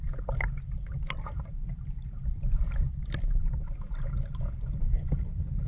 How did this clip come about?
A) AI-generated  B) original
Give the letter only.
B